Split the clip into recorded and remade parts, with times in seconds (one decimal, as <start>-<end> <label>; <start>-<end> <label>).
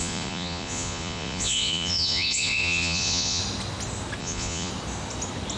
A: 0.0-3.4 remade; 3.4-4.2 recorded; 4.2-4.7 remade; 4.7-5.6 recorded